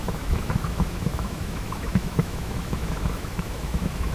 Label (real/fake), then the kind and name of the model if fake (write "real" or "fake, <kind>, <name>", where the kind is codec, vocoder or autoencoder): fake, autoencoder, DAC-VAE